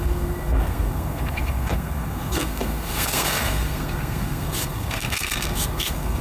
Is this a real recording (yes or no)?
no